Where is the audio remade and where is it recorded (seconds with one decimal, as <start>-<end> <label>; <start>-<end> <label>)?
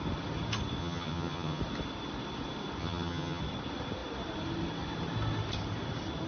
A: 0.0-0.8 recorded; 0.8-1.6 remade; 1.6-2.8 recorded; 2.8-3.4 remade; 3.4-6.3 recorded